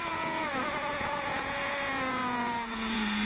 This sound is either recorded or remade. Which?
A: remade